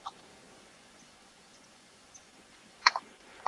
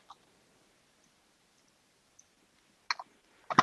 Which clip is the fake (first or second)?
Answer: first